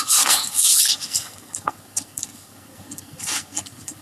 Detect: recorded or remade remade